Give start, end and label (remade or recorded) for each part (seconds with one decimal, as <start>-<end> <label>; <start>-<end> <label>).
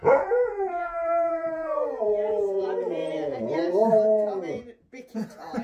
0.0-5.6 remade